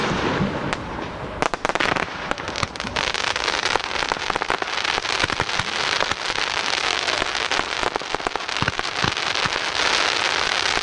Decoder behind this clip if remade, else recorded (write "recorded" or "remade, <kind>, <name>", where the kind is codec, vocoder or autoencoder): recorded